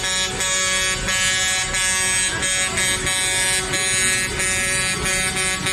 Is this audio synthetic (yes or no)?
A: no